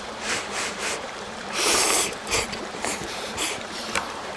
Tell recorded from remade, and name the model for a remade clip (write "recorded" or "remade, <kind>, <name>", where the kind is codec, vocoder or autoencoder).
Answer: remade, vocoder, BigVGAN v2